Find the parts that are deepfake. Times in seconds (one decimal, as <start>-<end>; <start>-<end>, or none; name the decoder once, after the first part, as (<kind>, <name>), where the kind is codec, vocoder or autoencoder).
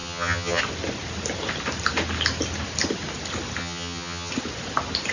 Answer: 0.0-0.6 (vocoder, HiFi-GAN); 3.6-4.3